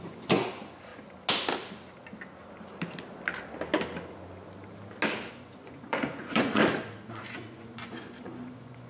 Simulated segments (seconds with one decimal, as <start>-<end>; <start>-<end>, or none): 0.0-0.9; 5.3-6.6; 7.1-8.9